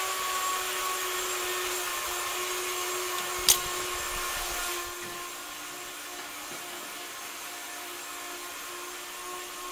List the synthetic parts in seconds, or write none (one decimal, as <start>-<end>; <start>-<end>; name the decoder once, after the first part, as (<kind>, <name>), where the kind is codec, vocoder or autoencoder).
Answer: none